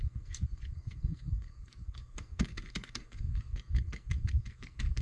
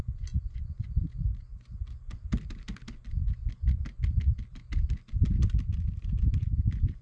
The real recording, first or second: second